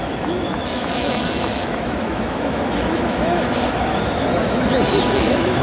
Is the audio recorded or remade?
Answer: remade